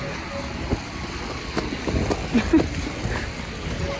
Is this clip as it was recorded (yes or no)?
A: yes